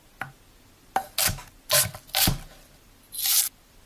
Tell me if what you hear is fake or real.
real